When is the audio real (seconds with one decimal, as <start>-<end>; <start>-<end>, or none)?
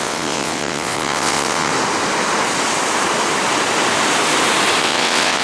1.7-4.8